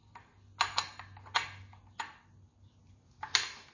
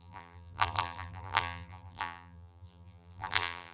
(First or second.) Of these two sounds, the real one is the first